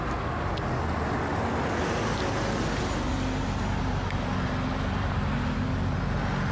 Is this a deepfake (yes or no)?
no